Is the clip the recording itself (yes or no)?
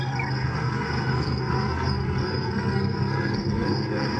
no